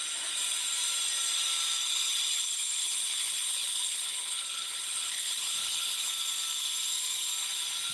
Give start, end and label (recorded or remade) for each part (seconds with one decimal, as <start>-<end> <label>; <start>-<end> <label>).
0.0-1.8 recorded; 1.8-6.1 remade; 6.1-7.9 recorded